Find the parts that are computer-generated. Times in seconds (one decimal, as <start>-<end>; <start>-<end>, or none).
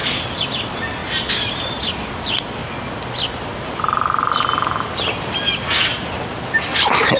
0.6-1.0; 2.1-2.6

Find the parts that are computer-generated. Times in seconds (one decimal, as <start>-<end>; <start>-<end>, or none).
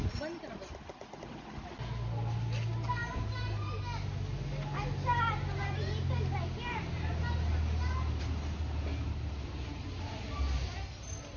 none